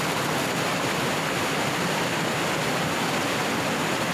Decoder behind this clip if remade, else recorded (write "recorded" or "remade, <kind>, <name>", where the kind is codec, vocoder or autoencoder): recorded